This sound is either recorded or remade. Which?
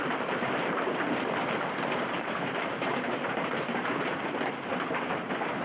remade